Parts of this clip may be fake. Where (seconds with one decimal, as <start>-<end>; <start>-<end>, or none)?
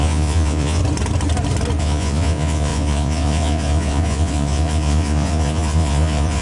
0.0-0.8; 1.8-6.4